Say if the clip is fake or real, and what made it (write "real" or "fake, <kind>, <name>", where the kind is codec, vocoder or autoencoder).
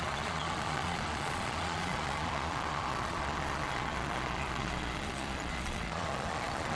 fake, vocoder, Vocos